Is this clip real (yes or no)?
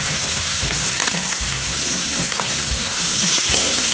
no